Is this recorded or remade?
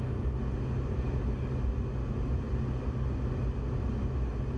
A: recorded